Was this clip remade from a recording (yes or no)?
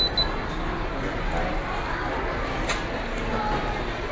no